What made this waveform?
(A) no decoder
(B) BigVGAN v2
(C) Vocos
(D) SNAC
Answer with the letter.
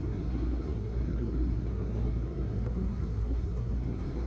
D